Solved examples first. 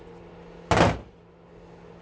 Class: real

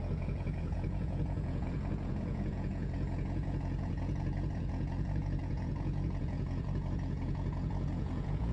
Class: fake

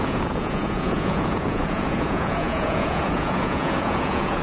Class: fake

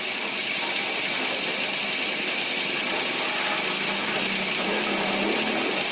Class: real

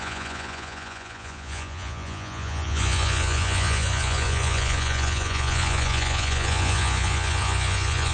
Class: fake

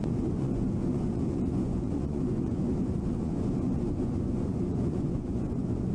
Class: fake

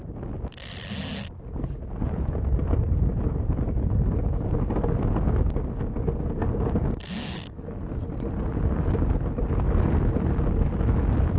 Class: real